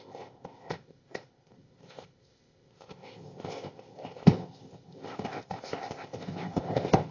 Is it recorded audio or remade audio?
remade